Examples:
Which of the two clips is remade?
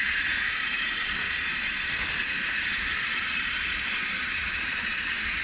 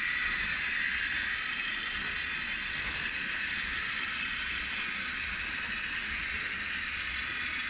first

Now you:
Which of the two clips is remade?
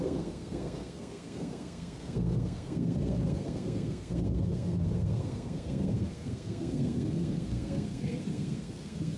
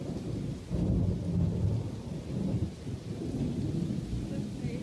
first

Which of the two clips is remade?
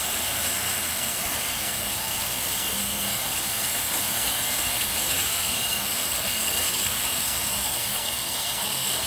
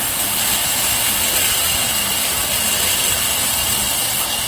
first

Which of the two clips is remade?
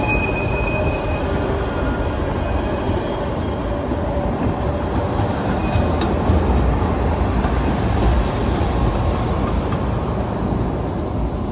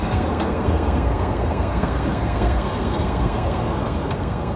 second